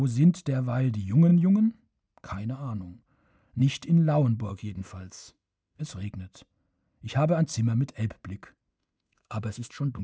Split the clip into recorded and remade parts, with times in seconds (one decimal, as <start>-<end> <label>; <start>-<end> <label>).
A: 0.0-4.5 recorded; 4.5-5.8 remade; 5.8-8.7 recorded; 8.7-10.0 remade